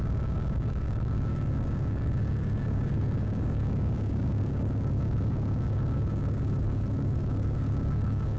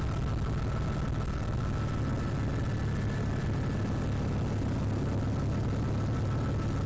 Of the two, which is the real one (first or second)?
second